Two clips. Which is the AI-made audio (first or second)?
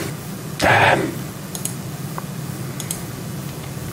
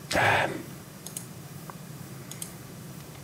second